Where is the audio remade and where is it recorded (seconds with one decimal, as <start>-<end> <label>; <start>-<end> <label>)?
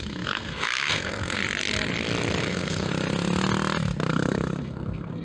0.0-1.4 remade; 1.4-2.4 recorded; 2.4-2.9 remade; 2.9-4.1 recorded; 4.1-5.2 remade